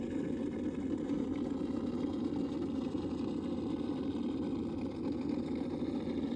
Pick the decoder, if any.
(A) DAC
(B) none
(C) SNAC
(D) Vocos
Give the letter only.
B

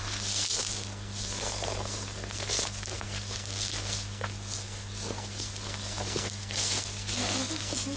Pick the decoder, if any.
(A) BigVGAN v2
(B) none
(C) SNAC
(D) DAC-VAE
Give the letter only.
C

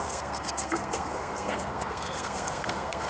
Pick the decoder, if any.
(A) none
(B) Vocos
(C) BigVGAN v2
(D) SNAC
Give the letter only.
D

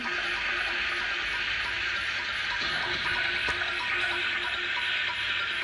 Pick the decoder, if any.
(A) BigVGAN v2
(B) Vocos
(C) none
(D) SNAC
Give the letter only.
C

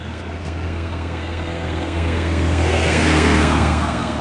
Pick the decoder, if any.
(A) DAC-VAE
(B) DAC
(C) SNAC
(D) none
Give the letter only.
C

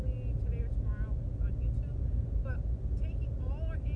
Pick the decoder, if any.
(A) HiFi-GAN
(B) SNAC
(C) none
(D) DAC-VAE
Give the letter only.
C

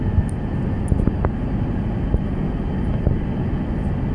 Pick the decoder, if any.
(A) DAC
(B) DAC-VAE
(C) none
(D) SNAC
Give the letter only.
C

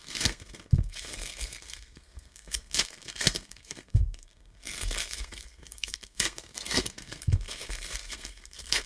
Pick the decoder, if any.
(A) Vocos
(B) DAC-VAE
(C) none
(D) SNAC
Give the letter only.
D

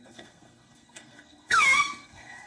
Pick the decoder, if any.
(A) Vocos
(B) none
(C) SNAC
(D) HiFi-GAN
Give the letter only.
C